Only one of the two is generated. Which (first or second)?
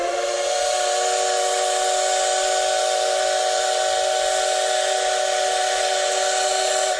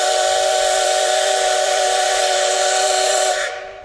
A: second